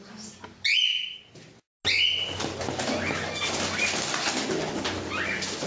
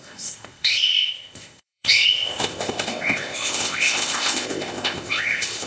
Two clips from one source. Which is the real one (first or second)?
first